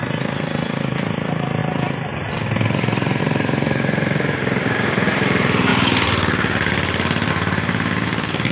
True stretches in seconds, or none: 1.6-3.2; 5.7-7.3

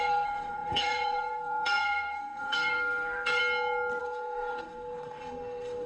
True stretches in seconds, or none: 3.4-4.0

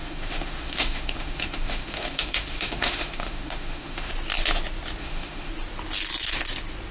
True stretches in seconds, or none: 4.1-5.0; 5.5-6.9